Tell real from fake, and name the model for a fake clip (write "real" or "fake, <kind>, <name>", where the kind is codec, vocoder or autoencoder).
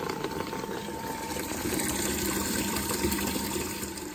fake, vocoder, BigVGAN v2